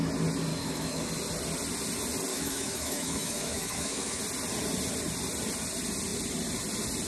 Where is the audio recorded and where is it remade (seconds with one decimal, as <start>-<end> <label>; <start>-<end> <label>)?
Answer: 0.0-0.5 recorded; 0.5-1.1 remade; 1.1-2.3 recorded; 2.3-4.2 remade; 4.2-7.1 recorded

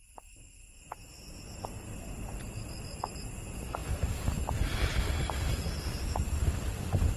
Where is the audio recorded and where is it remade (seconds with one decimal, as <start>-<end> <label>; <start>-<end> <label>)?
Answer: 0.0-7.2 recorded

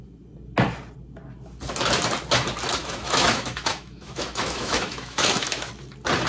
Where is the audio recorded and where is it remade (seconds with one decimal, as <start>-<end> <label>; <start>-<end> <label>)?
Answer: 0.0-2.8 recorded; 2.8-5.7 remade; 5.7-6.3 recorded

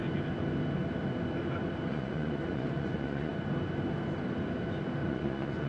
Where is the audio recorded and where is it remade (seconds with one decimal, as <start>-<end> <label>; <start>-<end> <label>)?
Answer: 0.0-1.9 recorded; 1.9-3.3 remade; 3.3-5.0 recorded; 5.0-5.7 remade

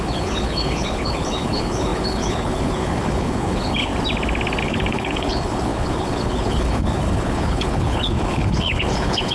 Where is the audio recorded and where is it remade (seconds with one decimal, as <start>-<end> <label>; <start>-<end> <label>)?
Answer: 0.0-3.9 remade; 3.9-4.6 recorded; 4.6-9.3 remade

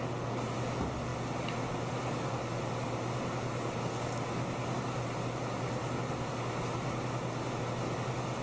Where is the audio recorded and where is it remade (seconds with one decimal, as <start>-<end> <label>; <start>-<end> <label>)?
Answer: 0.0-8.4 recorded